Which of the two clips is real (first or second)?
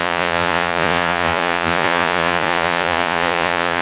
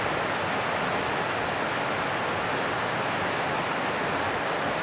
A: second